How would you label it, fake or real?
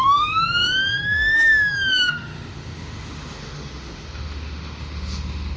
fake